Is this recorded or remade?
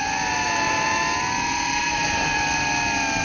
recorded